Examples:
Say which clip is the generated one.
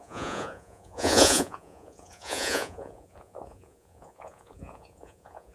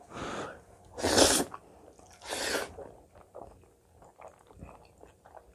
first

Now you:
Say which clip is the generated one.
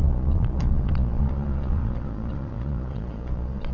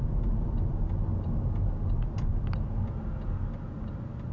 first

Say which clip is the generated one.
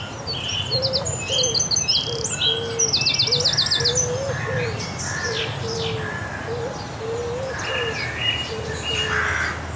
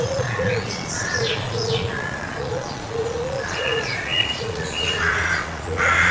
second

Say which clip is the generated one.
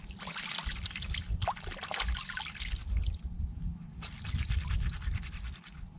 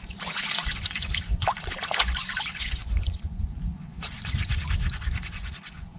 second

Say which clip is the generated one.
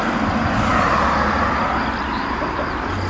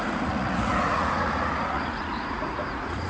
second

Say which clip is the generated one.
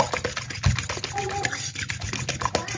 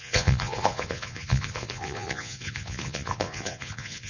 second